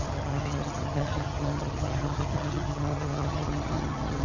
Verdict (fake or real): fake